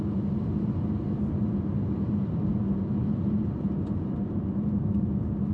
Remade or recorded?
recorded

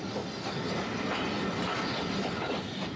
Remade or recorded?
recorded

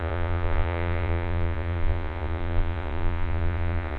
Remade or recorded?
remade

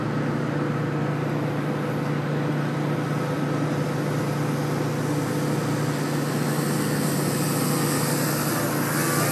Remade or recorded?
recorded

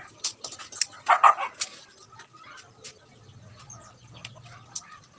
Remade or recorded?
recorded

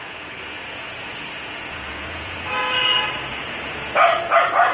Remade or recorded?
remade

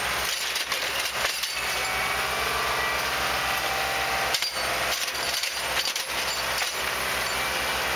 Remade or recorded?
recorded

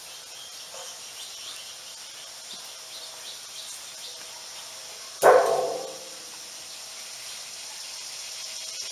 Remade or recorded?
recorded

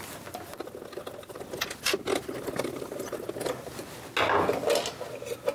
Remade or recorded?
recorded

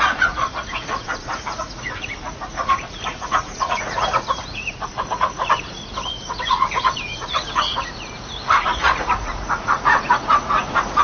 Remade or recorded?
remade